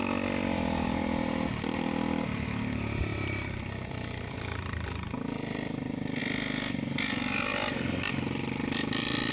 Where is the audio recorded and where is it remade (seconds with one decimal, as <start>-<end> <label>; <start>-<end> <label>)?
0.0-3.1 recorded; 3.1-6.2 remade; 6.2-9.3 recorded